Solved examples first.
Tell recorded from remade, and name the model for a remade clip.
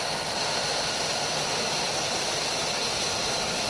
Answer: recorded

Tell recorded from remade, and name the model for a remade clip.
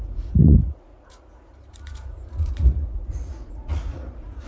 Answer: remade, vocoder, Vocos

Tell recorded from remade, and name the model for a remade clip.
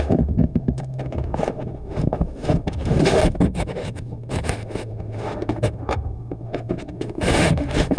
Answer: remade, autoencoder, DAC-VAE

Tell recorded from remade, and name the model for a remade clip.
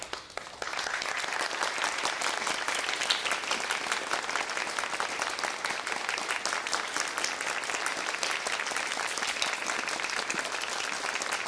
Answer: recorded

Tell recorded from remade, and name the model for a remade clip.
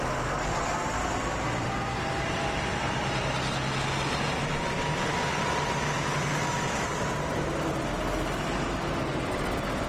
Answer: recorded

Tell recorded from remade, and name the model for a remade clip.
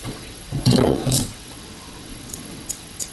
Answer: remade, vocoder, WaveNeXt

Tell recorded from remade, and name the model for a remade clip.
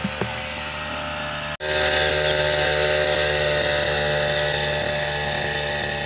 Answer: recorded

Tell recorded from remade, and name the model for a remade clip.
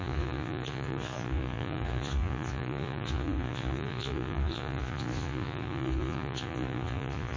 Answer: remade, vocoder, Vocos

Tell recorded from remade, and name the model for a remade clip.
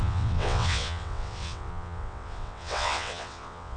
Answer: remade, vocoder, WaveNeXt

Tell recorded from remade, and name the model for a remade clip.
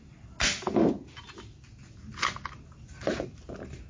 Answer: recorded